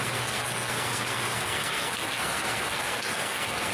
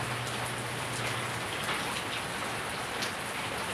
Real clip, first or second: second